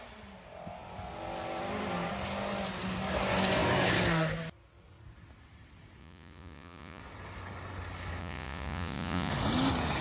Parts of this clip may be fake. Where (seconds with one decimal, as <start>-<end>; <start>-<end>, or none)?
6.0-7.0; 8.2-9.3